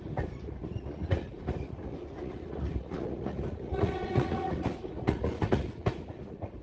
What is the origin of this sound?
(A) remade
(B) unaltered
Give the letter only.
A